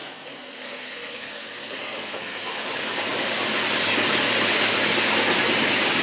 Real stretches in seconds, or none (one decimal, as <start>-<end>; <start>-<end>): 2.7-6.0